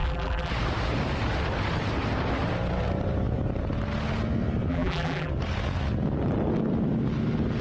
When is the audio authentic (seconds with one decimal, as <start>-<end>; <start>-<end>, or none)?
0.5-4.7; 5.3-7.6